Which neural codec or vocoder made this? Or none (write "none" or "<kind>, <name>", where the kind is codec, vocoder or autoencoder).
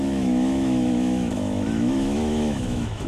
autoencoder, DAC-VAE